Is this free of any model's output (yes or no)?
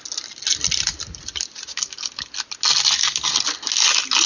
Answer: yes